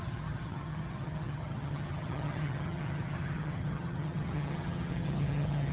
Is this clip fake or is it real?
fake